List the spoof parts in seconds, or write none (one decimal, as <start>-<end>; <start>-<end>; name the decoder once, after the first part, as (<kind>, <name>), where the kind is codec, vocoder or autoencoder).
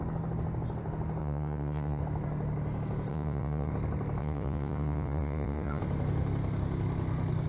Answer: 1.2-2.0 (vocoder, Vocos); 3.1-3.7; 4.2-5.8